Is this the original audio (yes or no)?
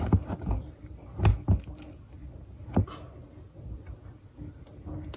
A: yes